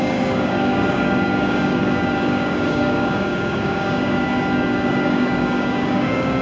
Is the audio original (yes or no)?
no